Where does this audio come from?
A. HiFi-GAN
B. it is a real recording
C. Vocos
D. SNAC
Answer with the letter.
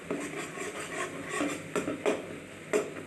B